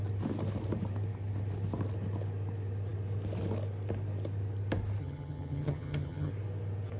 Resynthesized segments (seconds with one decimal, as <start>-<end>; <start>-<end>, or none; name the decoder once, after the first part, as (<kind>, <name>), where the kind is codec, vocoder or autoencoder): 5.0-6.3 (vocoder, HiFi-GAN)